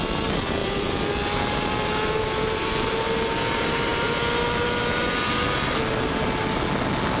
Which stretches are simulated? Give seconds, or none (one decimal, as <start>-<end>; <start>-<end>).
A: none